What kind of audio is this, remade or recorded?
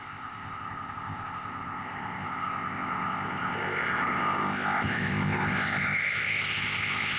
remade